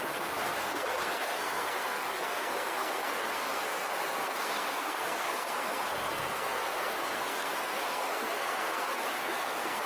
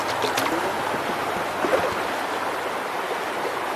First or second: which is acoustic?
second